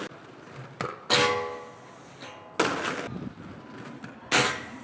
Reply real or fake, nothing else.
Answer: real